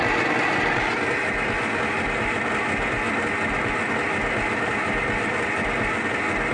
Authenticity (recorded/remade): recorded